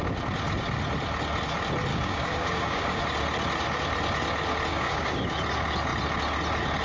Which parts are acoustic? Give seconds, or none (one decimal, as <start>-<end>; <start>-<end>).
0.0-1.9; 3.0-4.7; 5.3-6.8